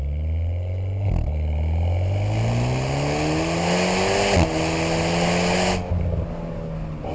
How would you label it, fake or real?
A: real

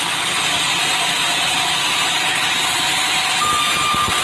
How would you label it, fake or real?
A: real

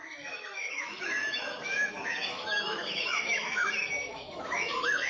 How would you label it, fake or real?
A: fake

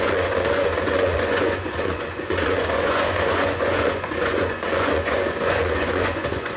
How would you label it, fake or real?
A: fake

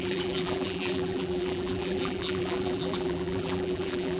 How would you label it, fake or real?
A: fake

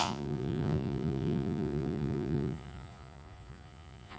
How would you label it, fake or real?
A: fake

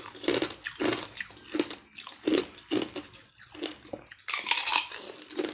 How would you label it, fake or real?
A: real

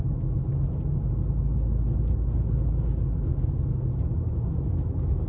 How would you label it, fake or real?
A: real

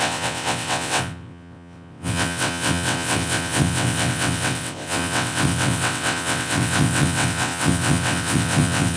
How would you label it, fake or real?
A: fake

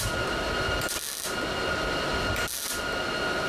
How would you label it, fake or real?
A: real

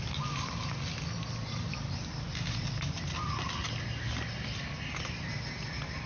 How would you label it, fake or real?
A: real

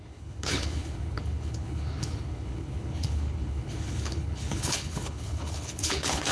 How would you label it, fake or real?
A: fake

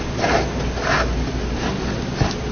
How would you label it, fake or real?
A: real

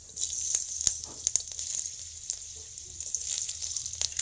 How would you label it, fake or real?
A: real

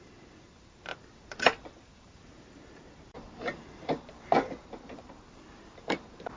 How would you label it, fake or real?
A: fake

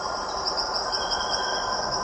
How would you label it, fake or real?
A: fake